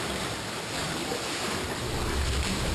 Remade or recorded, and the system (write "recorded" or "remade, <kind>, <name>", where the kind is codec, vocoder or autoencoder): remade, vocoder, BigVGAN v2